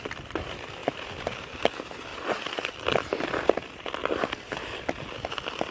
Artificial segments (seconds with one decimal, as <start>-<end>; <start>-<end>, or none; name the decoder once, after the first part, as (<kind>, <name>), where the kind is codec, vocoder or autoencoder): none